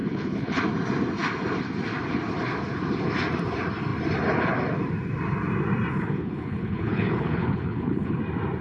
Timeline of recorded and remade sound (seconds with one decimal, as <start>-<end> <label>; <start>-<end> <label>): 0.0-0.6 remade; 0.6-5.9 recorded; 5.9-8.2 remade; 8.2-8.6 recorded